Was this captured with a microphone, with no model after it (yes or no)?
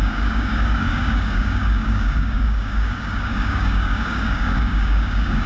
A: no